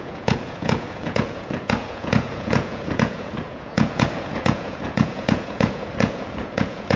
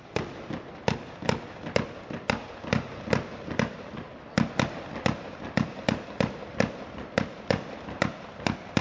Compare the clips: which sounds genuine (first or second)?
second